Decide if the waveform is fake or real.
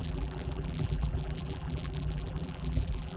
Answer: fake